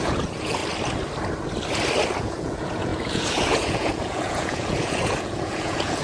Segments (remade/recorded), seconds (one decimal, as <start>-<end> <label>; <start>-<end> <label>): 0.0-0.6 remade; 0.6-2.2 recorded; 2.2-6.0 remade

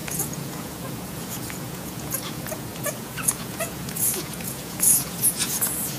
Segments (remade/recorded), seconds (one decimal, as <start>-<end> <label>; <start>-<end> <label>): 0.0-6.0 remade

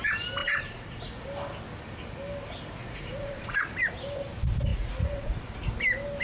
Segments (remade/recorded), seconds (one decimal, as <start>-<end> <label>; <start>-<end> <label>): 0.0-0.4 recorded; 0.4-1.1 remade; 1.1-2.8 recorded; 2.8-3.6 remade; 3.6-4.7 recorded; 4.7-5.6 remade; 5.6-6.2 recorded